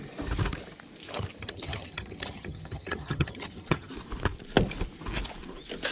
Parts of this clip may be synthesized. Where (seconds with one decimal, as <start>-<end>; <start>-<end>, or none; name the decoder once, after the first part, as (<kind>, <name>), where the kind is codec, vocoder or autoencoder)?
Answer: 1.4-3.9 (vocoder, HiFi-GAN)